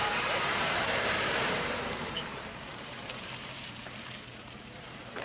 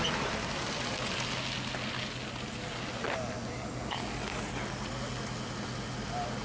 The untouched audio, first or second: second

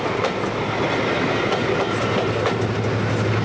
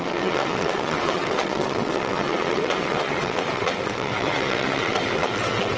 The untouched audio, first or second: first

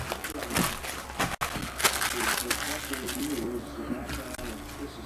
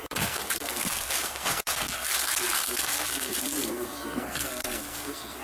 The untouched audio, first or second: first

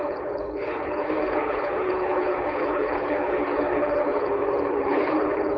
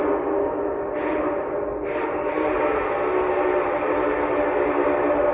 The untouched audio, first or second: second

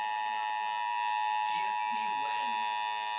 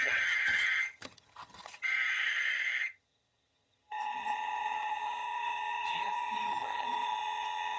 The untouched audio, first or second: first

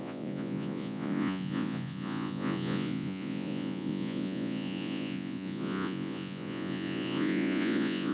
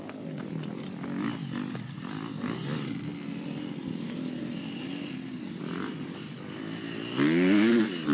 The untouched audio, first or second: second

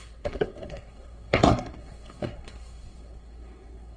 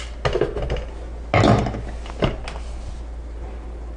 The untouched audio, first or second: second